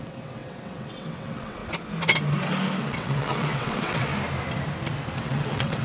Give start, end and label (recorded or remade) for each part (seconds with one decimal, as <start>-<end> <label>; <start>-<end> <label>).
0.0-1.6 remade; 1.6-2.8 recorded; 2.8-4.1 remade; 4.1-5.2 recorded; 5.2-5.8 remade